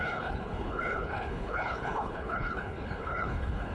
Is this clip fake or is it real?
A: fake